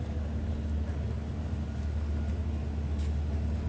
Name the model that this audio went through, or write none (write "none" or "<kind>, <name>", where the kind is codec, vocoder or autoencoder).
none